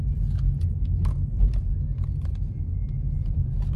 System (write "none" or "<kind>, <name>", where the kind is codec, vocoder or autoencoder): none